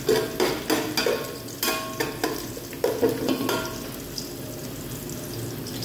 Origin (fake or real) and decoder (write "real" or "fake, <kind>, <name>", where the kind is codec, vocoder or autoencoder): real